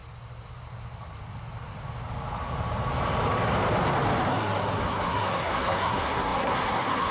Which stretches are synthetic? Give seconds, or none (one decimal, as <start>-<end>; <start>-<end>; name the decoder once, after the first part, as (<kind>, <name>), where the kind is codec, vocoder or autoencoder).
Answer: 4.3-7.1 (codec, SNAC)